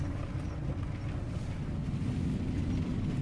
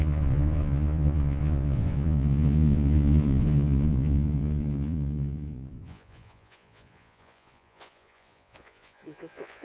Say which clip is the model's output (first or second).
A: second